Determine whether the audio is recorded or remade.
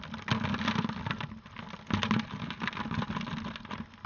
recorded